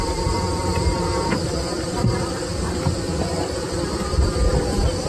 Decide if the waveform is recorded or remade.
recorded